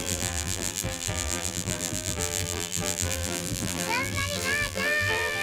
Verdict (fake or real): fake